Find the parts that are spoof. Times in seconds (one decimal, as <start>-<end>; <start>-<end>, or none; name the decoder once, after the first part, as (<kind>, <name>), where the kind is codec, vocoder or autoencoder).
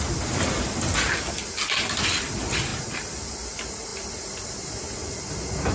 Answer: none